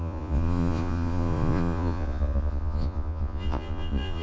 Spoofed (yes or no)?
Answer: yes